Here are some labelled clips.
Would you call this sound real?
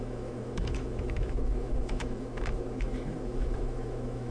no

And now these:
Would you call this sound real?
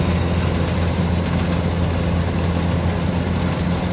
yes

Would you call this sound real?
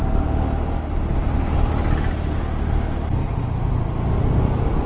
yes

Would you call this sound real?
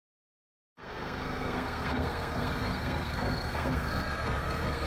no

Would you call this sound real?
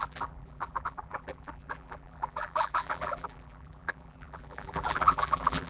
no